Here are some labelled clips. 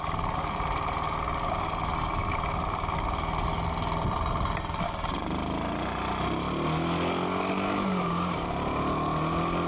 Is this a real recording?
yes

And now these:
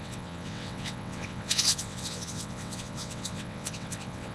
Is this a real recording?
no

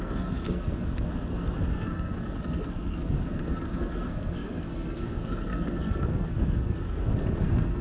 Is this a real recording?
no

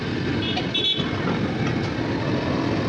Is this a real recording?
yes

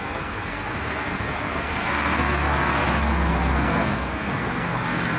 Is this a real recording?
no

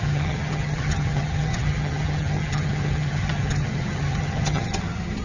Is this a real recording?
no